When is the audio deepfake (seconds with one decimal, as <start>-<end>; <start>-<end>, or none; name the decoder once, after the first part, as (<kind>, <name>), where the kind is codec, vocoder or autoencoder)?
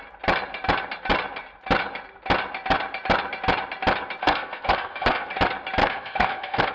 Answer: 4.2-5.3 (codec, SNAC); 5.8-6.7